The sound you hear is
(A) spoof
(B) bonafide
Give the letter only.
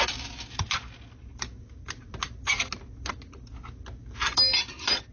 B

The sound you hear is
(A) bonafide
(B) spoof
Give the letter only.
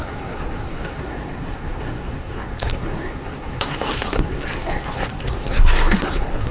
B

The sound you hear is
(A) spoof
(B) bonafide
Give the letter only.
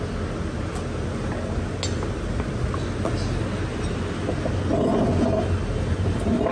B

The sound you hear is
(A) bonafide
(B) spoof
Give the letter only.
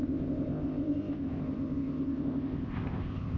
B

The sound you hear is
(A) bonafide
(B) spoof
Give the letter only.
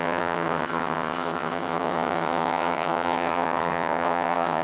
B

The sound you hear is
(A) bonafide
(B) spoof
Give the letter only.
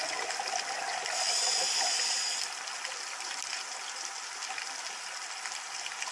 A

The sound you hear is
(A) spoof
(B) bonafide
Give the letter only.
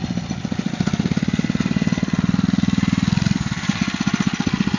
B